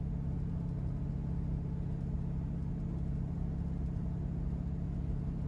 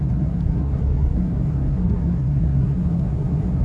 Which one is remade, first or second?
second